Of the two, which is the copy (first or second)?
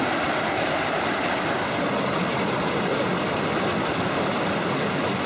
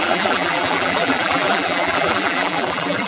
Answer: second